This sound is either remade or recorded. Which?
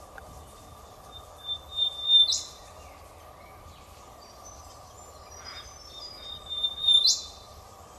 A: recorded